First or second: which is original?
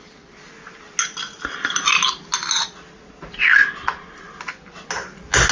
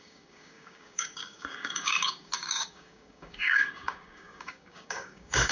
first